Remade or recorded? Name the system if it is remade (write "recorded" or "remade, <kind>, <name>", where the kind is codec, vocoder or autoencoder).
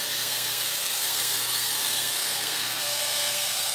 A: remade, codec, SNAC